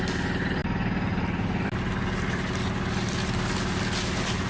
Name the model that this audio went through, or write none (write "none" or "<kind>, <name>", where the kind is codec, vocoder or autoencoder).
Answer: none